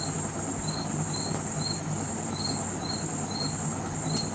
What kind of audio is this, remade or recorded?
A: recorded